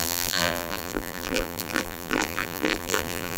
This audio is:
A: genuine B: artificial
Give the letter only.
B